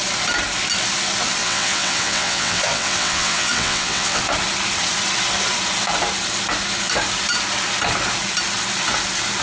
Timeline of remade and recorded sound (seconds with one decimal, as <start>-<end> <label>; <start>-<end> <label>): 0.0-1.4 recorded; 1.4-4.2 remade; 4.2-9.4 recorded